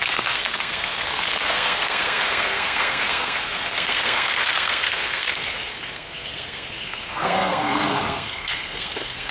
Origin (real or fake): fake